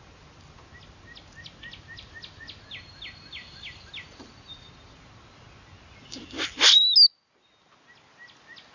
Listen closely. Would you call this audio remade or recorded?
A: recorded